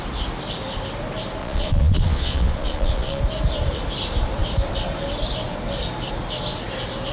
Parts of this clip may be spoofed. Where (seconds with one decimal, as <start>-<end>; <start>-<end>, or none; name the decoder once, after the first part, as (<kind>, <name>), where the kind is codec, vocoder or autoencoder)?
1.4-3.2 (vocoder, Vocos)